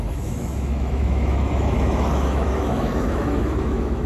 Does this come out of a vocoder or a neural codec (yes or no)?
yes